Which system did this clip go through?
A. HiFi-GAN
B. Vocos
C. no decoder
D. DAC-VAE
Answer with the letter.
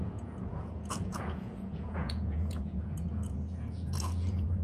B